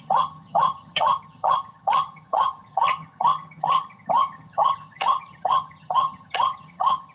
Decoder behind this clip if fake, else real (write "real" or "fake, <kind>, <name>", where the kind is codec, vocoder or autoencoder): fake, vocoder, HiFi-GAN